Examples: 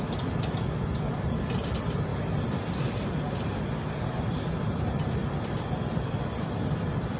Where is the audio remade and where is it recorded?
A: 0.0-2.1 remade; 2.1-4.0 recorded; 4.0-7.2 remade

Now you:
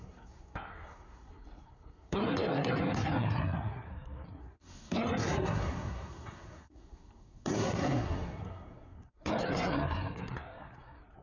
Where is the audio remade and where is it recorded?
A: 0.0-11.2 remade

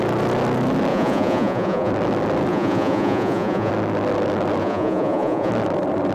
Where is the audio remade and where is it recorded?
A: 0.0-0.9 recorded; 0.9-1.9 remade; 1.9-2.5 recorded; 2.5-3.7 remade; 3.7-4.6 recorded; 4.6-5.5 remade; 5.5-6.1 recorded

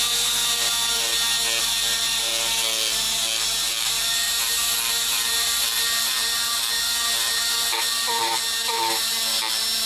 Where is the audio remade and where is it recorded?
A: 0.0-1.1 remade; 1.1-1.6 recorded; 1.6-2.3 remade; 2.3-3.7 recorded; 3.7-9.9 remade